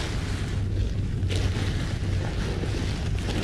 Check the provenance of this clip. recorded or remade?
recorded